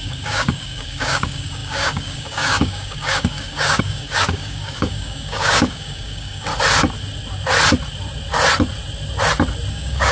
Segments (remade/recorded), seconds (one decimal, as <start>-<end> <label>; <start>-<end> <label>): 0.0-6.5 remade; 6.5-9.7 recorded; 9.7-10.1 remade